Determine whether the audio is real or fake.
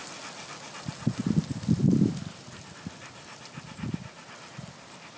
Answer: real